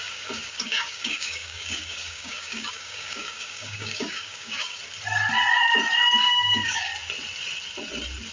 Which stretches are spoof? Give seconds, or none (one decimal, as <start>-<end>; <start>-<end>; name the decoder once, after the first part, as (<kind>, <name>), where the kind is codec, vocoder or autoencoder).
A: 0.0-4.8 (codec, DAC); 6.2-6.9